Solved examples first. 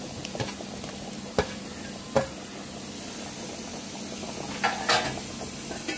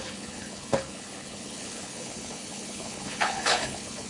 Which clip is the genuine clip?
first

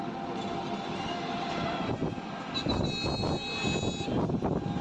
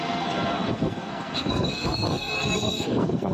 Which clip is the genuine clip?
first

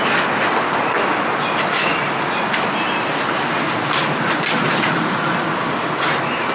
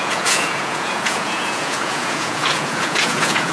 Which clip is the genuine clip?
first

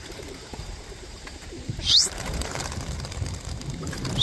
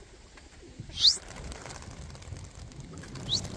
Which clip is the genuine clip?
second